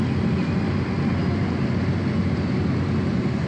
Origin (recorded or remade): recorded